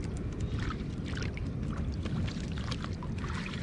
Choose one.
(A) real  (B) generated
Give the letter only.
B